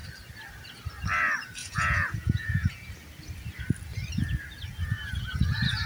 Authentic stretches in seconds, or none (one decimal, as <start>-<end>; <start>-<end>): 0.0-1.6; 2.9-5.9